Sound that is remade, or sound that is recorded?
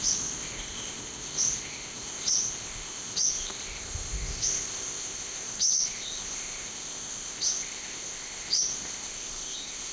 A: remade